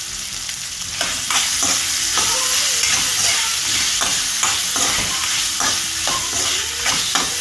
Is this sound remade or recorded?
recorded